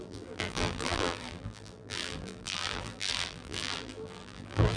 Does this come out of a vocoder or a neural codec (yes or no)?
yes